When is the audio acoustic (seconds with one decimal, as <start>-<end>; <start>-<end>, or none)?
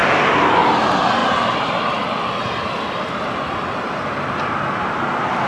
0.0-1.2; 2.2-5.5